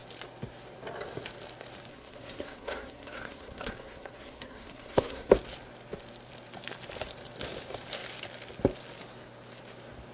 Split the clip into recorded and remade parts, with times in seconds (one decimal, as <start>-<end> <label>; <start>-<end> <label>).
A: 0.0-1.9 recorded; 1.9-5.3 remade; 5.3-10.1 recorded

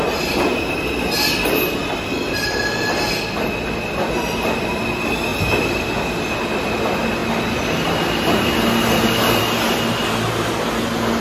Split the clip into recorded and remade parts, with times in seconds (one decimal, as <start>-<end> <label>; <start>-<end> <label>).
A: 0.0-11.2 recorded

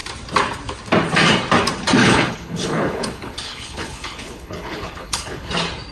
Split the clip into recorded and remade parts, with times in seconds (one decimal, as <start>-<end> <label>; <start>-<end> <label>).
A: 0.0-2.0 recorded; 2.0-5.5 remade; 5.5-5.9 recorded

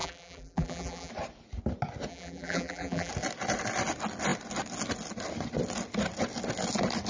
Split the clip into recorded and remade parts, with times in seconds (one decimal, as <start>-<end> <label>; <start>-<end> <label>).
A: 0.0-1.1 remade; 1.1-2.1 recorded; 2.1-3.1 remade; 3.1-7.1 recorded

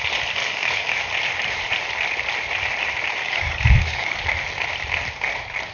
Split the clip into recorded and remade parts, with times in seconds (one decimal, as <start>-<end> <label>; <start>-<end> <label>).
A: 0.0-0.4 recorded; 0.4-1.0 remade; 1.0-3.2 recorded; 3.2-4.2 remade; 4.2-5.7 recorded

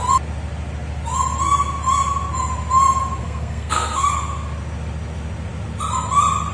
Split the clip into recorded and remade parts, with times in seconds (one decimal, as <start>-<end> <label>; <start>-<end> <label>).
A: 0.0-3.2 recorded; 3.2-4.1 remade; 4.1-6.5 recorded

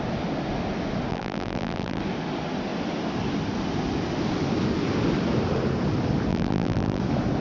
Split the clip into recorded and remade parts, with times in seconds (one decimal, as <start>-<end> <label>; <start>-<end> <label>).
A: 0.0-1.1 recorded; 1.1-2.0 remade; 2.0-6.3 recorded; 6.3-7.0 remade; 7.0-7.4 recorded

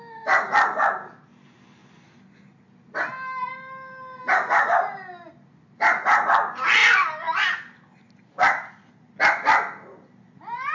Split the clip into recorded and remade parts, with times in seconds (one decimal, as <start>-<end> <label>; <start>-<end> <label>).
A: 0.0-10.7 recorded